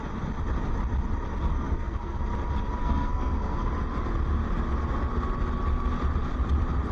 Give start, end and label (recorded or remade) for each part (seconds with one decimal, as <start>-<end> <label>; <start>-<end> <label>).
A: 0.0-1.5 recorded; 1.5-2.2 remade; 2.2-2.8 recorded; 2.8-3.7 remade; 3.7-6.9 recorded